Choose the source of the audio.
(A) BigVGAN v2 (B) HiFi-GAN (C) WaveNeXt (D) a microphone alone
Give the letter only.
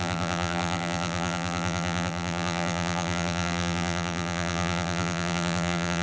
A